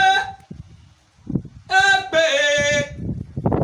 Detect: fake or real real